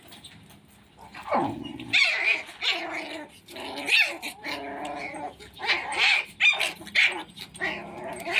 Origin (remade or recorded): recorded